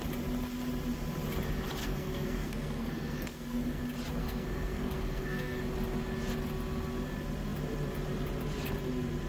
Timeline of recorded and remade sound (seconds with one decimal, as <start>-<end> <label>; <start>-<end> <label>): 0.0-1.8 recorded; 1.8-3.8 remade; 3.8-4.2 recorded; 4.2-5.6 remade; 5.6-9.3 recorded